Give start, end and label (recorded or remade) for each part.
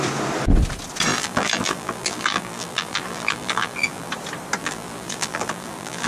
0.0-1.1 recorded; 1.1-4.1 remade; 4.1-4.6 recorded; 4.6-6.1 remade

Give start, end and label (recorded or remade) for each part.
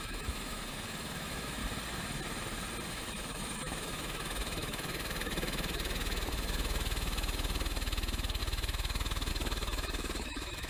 0.0-1.6 remade; 1.6-2.9 recorded; 2.9-10.7 remade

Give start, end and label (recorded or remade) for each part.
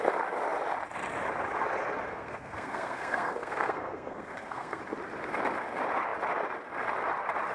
0.0-2.1 recorded; 2.1-4.8 remade; 4.8-7.5 recorded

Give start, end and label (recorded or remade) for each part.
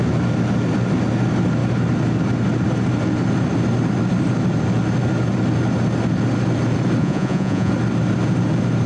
0.0-7.0 recorded; 7.0-7.7 remade; 7.7-8.9 recorded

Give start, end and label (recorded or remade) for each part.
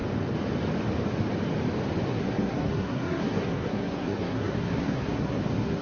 0.0-2.1 recorded; 2.1-5.8 remade